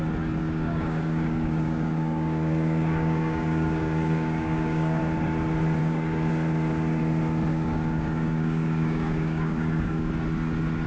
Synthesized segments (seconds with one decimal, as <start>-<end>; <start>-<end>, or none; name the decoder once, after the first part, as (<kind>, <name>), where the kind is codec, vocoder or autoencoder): 0.4-5.0 (codec, DAC); 5.8-6.3; 7.5-10.1